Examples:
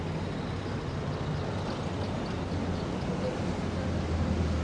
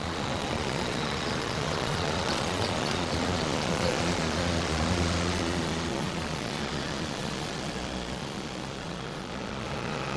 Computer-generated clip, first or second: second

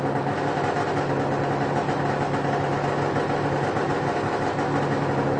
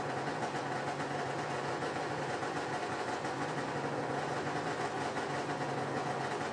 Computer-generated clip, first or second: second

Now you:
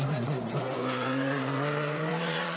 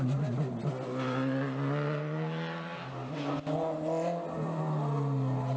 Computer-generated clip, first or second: first